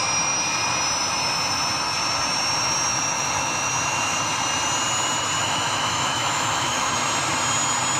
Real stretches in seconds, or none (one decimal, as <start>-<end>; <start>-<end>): 0.0-2.9; 3.7-5.4; 6.9-8.0